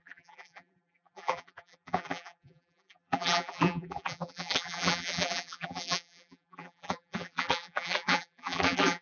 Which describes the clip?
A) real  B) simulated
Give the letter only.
B